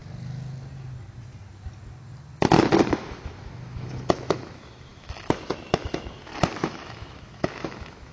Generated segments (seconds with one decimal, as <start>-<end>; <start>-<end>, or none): 2.9-8.1